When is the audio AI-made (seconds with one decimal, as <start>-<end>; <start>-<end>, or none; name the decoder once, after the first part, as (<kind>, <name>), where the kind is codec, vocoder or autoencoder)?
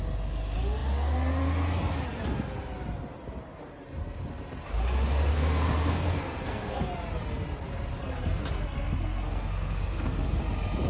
5.3-6.9 (codec, SNAC); 8.0-10.4